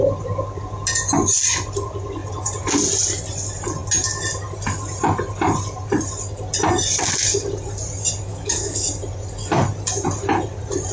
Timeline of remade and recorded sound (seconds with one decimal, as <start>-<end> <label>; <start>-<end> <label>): 0.0-8.3 recorded; 8.3-8.9 remade; 8.9-10.9 recorded